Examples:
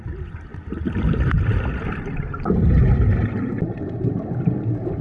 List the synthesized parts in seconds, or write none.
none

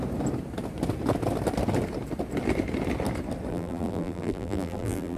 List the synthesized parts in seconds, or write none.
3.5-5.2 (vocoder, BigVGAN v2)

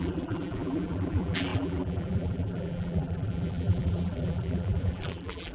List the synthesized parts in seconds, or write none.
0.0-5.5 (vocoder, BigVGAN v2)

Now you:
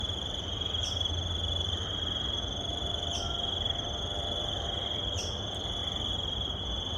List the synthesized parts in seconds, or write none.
0.0-7.0 (vocoder, BigVGAN v2)